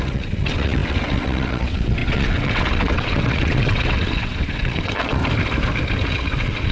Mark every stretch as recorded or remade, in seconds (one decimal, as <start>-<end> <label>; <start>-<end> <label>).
0.0-5.2 remade; 5.2-6.1 recorded; 6.1-6.7 remade